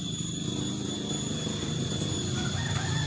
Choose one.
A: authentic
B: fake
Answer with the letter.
B